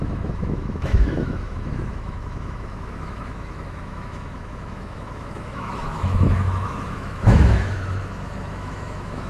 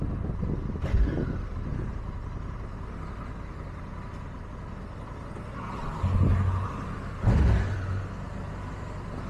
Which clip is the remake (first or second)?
first